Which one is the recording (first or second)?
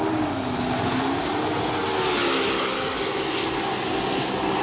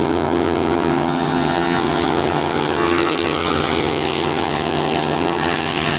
first